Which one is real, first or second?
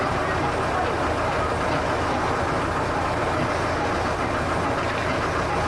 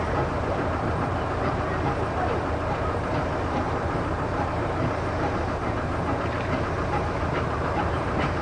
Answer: first